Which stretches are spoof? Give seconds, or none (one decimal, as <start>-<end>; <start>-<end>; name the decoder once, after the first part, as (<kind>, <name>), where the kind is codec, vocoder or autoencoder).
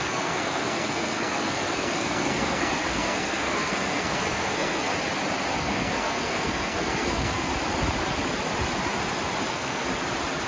0.0-4.9 (codec, SNAC); 5.6-7.5; 9.5-9.9